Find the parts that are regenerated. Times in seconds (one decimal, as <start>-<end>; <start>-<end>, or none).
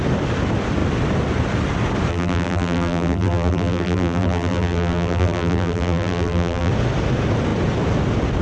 2.1-6.7